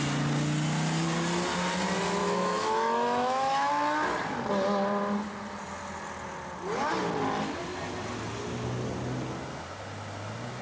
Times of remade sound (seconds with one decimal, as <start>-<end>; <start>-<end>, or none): 2.2-3.7